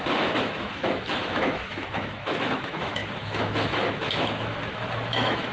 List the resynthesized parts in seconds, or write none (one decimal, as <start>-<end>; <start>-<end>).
0.0-5.5